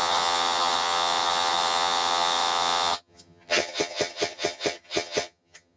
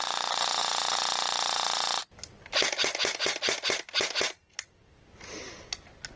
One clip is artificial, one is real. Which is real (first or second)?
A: second